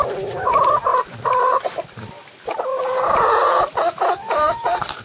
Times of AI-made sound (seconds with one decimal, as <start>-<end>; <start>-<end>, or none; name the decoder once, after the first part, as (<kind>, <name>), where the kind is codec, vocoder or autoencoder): 0.9-2.2 (vocoder, BigVGAN v2); 2.7-4.0